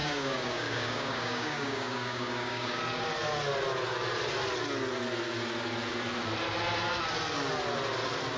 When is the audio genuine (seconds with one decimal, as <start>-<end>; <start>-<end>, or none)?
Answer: 2.8-8.4